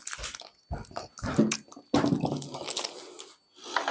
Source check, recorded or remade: recorded